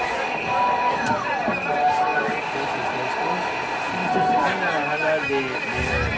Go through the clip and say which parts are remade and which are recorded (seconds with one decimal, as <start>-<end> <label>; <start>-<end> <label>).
0.0-6.2 recorded